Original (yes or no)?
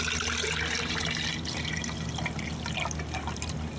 yes